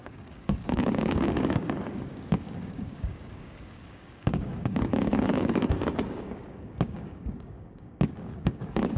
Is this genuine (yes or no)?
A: no